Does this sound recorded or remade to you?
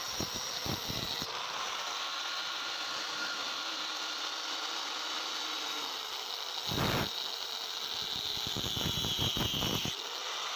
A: recorded